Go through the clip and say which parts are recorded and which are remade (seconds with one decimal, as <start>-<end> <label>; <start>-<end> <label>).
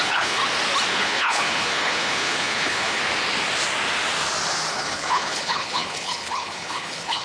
0.0-0.4 remade; 0.4-0.9 recorded; 0.9-3.0 remade; 3.0-4.7 recorded; 4.7-7.2 remade